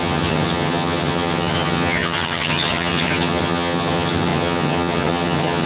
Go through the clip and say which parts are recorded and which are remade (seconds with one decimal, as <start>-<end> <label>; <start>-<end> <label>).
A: 0.0-5.7 remade